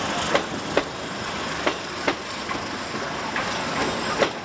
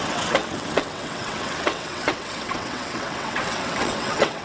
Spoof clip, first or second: second